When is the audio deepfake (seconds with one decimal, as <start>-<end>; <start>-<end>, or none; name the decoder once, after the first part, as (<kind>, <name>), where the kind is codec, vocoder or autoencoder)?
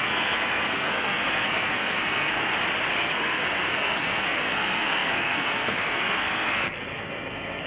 0.0-2.5 (codec, SNAC); 3.0-7.7